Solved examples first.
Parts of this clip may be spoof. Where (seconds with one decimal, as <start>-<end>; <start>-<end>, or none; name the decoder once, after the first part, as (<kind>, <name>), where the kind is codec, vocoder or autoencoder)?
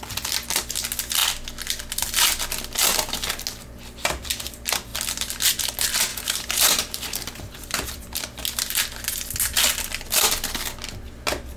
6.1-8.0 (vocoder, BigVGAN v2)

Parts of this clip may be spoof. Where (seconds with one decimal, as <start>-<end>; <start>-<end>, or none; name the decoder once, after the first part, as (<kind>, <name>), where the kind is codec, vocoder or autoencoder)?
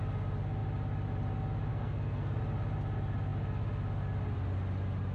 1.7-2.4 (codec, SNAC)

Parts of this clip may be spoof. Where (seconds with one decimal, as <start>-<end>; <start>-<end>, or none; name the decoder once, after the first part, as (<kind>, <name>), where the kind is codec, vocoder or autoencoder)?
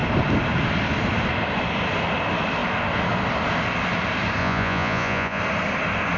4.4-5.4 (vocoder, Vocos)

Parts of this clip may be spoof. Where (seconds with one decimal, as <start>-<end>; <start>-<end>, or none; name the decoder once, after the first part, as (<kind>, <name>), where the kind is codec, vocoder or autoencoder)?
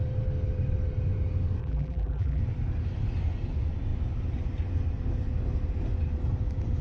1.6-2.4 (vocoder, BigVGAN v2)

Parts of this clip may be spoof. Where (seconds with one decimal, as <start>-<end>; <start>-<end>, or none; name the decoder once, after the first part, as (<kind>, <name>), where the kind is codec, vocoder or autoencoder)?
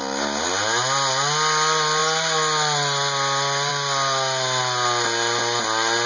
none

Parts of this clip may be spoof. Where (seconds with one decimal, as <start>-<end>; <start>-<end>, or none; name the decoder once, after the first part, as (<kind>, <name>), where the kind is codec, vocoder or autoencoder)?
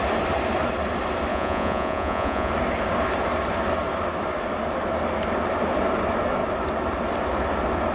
1.3-2.5 (vocoder, Vocos)